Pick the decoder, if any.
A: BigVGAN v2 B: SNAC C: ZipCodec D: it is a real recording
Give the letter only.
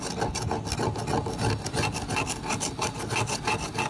D